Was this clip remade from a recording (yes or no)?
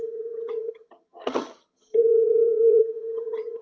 yes